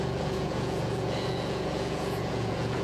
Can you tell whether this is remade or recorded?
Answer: remade